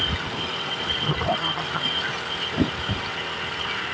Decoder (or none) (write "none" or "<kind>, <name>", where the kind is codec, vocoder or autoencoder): none